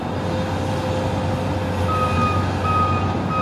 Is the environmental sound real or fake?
real